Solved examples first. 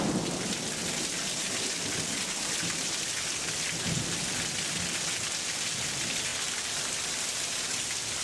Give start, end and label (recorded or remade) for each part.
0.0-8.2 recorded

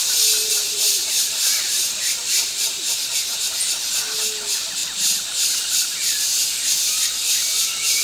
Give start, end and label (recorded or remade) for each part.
0.0-0.5 recorded; 0.5-3.1 remade; 3.1-8.0 recorded

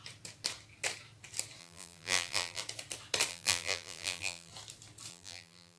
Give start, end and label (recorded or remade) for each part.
0.0-1.6 recorded; 1.6-2.6 remade; 2.6-3.3 recorded; 3.3-4.5 remade; 4.5-5.1 recorded; 5.1-5.8 remade

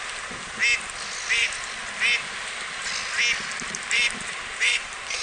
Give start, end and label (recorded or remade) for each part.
0.0-0.6 remade; 0.6-3.7 recorded; 3.7-5.2 remade

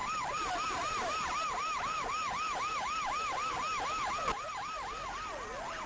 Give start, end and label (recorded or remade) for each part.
0.0-3.5 remade; 3.5-5.9 recorded

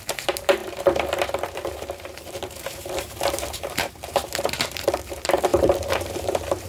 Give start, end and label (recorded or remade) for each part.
0.0-6.7 remade